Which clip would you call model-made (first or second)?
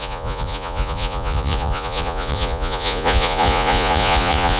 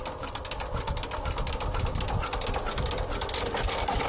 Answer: first